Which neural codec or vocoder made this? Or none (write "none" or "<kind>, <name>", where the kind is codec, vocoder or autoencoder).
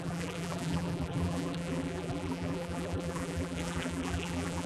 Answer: vocoder, BigVGAN v2